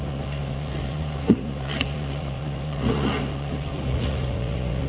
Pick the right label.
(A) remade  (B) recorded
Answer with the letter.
A